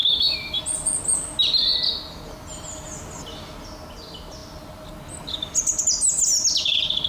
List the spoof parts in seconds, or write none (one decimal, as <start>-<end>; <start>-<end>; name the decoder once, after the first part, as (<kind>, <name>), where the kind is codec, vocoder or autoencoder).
0.0-0.6 (autoencoder, DAC-VAE)